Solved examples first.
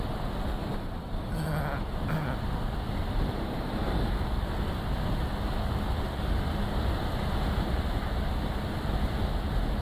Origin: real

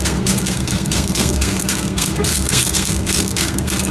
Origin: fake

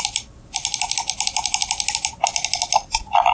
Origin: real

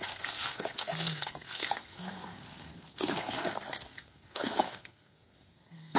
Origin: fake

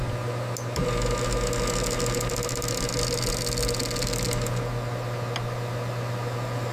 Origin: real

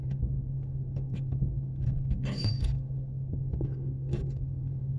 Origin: fake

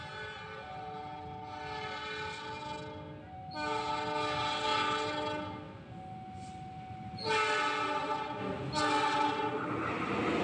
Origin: real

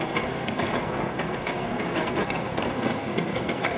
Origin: fake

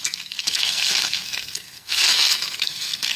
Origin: fake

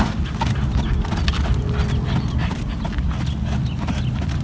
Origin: real